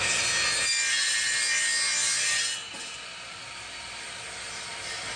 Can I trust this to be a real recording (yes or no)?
yes